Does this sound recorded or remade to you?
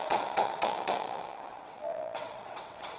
remade